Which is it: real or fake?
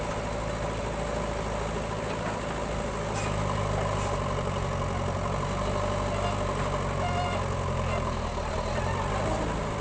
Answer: real